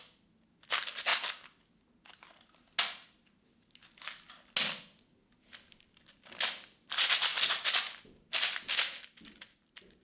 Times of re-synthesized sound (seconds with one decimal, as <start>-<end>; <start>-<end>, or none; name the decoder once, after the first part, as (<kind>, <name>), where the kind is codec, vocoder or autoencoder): none